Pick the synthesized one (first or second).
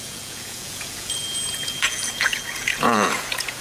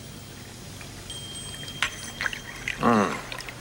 first